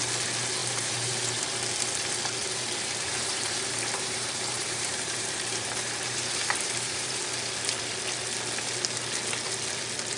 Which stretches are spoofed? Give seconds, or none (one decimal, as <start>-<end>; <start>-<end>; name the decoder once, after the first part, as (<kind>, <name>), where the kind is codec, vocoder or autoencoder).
0.6-1.4 (vocoder, BigVGAN v2); 2.4-7.2